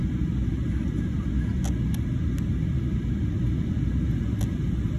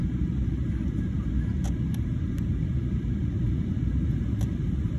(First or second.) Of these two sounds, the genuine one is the first